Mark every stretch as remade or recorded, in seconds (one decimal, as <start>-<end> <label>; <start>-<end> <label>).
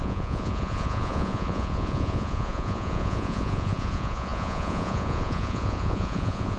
0.0-6.6 remade